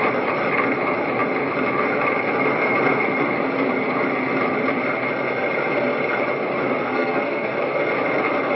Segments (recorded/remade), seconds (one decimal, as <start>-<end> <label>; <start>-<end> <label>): 0.0-6.8 recorded; 6.8-7.5 remade; 7.5-8.6 recorded